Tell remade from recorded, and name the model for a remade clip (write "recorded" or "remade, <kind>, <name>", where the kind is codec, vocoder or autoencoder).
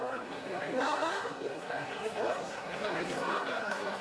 remade, codec, SNAC